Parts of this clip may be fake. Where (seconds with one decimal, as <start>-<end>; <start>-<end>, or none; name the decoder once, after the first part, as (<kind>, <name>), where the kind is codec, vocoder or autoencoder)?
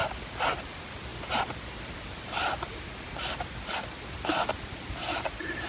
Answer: none